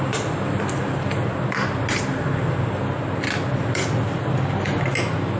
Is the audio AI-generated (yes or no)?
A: no